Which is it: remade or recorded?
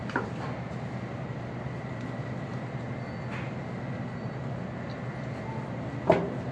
recorded